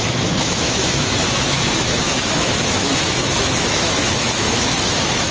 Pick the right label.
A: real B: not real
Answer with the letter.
B